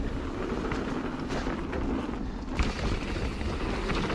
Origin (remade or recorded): recorded